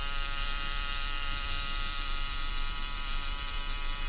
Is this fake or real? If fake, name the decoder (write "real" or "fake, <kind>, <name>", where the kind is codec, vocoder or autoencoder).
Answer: fake, vocoder, BigVGAN v2